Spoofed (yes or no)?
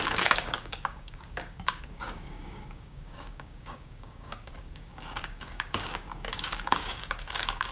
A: yes